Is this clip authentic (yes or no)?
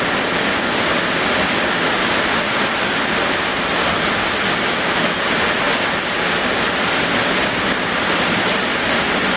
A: yes